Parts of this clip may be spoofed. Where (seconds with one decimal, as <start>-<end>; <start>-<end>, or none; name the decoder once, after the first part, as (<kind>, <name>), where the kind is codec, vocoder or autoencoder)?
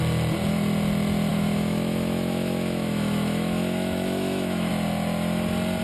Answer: 1.3-4.7 (autoencoder, DAC-VAE)